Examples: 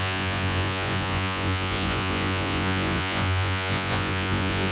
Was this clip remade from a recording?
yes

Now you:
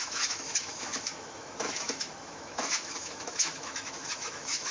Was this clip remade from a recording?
yes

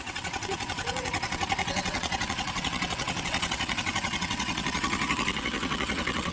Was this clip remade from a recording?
yes